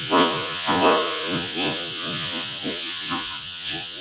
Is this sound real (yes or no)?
no